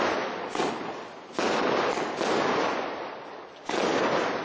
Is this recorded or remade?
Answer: recorded